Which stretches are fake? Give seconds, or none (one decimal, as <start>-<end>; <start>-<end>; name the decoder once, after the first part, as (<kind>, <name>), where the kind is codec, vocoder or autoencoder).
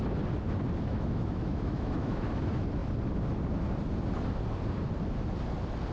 0.9-2.4 (autoencoder, DAC-VAE)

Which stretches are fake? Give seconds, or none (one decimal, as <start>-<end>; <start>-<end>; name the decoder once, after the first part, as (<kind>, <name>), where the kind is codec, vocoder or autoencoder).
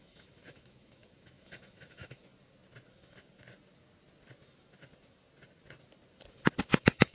0.0-2.3 (autoencoder, DAC-VAE); 6.6-7.1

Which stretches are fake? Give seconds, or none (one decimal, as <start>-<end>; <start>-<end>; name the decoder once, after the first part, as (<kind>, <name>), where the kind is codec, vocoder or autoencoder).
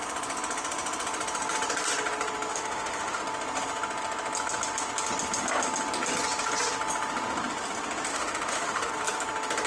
2.5-3.2 (autoencoder, DAC-VAE); 8.1-8.9